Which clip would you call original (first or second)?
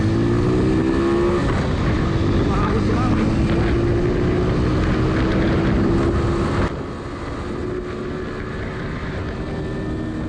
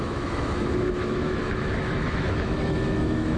first